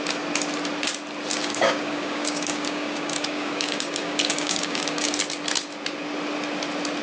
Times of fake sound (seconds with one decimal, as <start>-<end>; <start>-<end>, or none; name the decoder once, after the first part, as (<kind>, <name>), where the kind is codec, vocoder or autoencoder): 1.4-5.2 (codec, DAC)

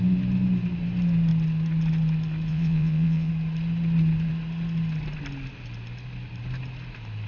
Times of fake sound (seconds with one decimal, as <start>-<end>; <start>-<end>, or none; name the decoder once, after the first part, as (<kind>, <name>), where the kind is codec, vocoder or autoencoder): 2.5-3.3 (vocoder, WaveNeXt)

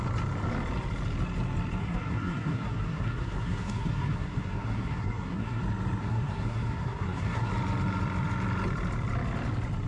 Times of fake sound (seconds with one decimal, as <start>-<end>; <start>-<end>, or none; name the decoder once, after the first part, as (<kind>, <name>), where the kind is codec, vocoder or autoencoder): 1.8-5.6 (codec, SNAC); 6.0-7.5

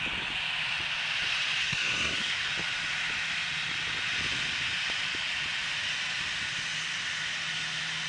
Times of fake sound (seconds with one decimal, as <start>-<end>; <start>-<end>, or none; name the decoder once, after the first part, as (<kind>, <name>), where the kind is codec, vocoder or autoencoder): 1.6-2.5 (codec, SNAC)

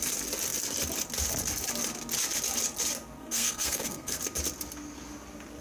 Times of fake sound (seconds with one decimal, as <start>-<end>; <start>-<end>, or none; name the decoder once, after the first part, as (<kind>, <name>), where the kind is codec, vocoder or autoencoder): 3.2-4.2 (codec, SNAC)

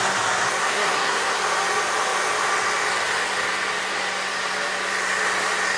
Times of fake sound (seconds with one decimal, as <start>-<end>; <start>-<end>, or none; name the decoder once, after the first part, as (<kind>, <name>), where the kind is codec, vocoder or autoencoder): 0.6-1.4 (codec, SNAC)